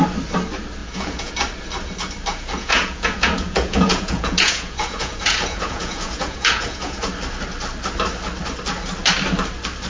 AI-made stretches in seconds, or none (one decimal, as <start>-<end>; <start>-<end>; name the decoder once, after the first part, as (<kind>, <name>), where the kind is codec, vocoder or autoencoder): 0.8-1.3 (vocoder, Vocos); 2.3-7.1